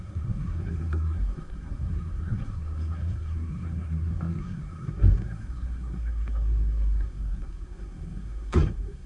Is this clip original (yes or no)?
no